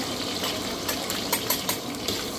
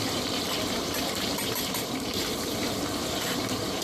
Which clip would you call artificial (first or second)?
second